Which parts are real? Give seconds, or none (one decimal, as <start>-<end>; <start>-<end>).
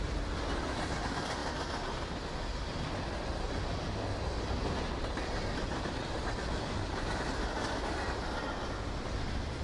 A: 0.0-9.6